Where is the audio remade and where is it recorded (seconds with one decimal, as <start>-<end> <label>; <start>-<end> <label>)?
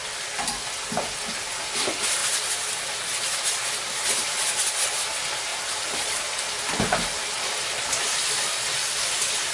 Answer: 0.0-9.5 recorded